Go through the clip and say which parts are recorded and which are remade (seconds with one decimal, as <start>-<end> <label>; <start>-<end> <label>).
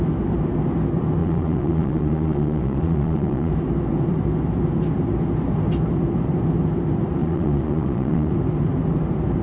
0.0-1.2 recorded; 1.2-3.5 remade; 3.5-7.2 recorded; 7.2-8.3 remade; 8.3-9.4 recorded